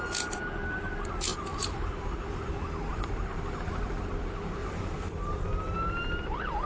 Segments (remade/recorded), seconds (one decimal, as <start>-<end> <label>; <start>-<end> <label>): 0.0-1.3 recorded; 1.3-2.5 remade; 2.5-2.9 recorded; 2.9-4.1 remade; 4.1-4.6 recorded; 4.6-5.4 remade; 5.4-6.7 recorded